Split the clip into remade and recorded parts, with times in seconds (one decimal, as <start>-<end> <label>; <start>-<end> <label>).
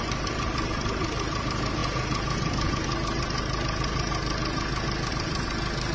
0.0-1.8 remade; 1.8-5.1 recorded; 5.1-5.9 remade